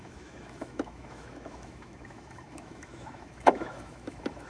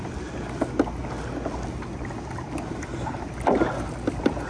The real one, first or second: second